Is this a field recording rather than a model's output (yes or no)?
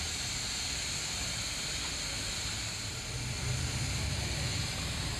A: yes